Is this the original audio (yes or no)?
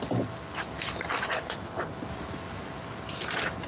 no